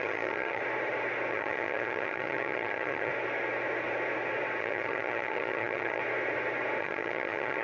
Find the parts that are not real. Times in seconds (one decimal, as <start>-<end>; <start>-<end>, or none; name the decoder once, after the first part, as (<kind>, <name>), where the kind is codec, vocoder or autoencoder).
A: 0.0-0.6 (vocoder, HiFi-GAN); 1.3-3.1; 4.6-6.0; 6.8-7.6